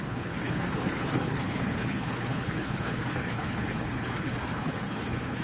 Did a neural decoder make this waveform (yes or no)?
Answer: yes